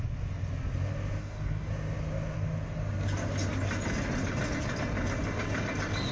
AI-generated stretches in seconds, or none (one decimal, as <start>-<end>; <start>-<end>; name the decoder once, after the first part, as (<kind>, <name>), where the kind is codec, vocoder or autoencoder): 1.2-1.7 (codec, DAC)